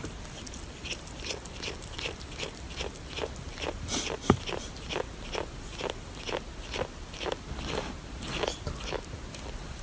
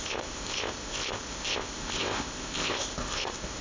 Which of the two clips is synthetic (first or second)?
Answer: second